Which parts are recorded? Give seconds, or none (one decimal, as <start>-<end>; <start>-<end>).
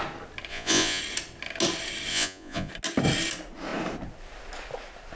0.0-0.5; 1.0-2.1; 2.7-5.2